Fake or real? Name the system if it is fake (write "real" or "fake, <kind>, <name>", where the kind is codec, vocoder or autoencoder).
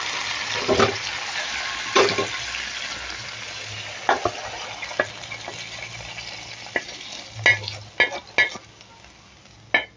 real